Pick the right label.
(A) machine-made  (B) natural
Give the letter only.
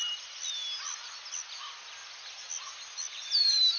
B